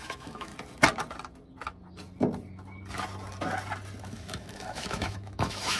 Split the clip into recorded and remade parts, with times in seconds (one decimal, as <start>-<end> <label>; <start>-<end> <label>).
0.0-0.5 remade; 0.5-4.0 recorded; 4.0-5.8 remade